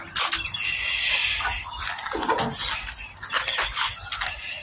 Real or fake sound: real